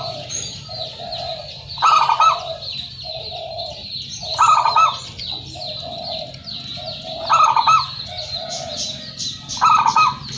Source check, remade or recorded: recorded